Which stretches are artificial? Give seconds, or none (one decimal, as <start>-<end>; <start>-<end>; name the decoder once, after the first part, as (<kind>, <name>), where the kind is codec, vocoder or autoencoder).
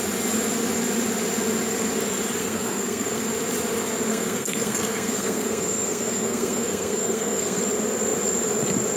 2.4-3.2 (codec, SNAC); 4.1-7.6